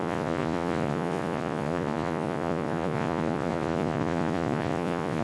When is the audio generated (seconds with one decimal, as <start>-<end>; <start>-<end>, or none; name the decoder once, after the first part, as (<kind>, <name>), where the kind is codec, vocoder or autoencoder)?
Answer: 0.0-5.2 (vocoder, Vocos)